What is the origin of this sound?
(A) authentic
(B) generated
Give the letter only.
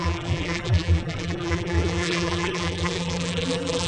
B